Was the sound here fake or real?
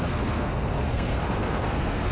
fake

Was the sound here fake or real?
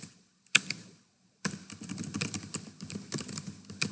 real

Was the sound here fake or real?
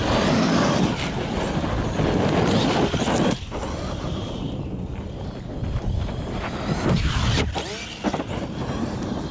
real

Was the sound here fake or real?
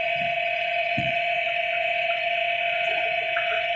fake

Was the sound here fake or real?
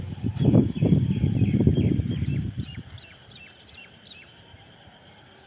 fake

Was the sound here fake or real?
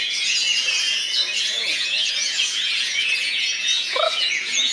fake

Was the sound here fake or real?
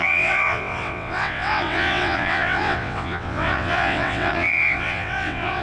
fake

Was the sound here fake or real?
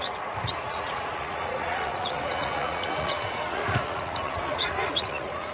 fake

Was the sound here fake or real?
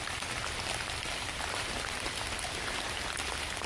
real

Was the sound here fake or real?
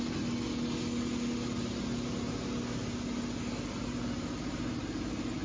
real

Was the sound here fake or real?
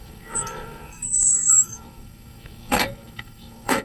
fake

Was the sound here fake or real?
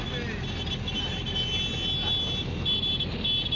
real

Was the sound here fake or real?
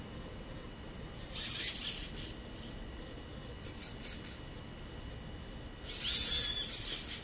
real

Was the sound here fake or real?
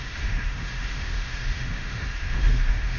fake